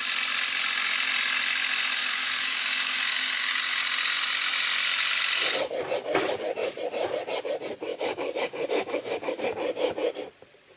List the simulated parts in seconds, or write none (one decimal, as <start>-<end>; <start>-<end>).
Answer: 2.0-3.6; 7.9-9.4